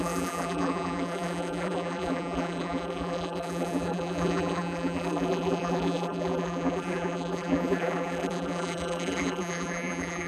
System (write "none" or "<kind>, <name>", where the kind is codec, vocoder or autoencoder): vocoder, BigVGAN v2